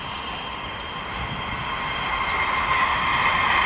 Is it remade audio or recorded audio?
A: recorded